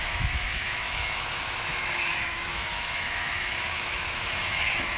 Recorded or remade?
remade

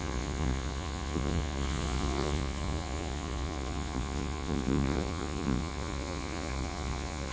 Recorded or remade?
remade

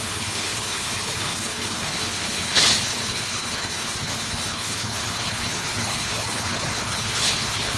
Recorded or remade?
remade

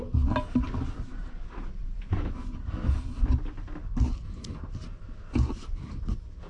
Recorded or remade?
recorded